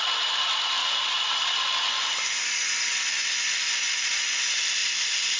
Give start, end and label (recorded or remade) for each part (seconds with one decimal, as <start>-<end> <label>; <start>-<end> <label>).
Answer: 0.0-0.8 recorded; 0.8-1.5 remade; 1.5-5.4 recorded